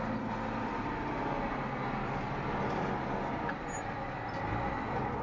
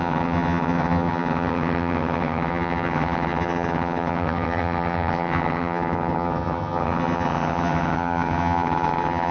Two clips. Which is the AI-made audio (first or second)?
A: second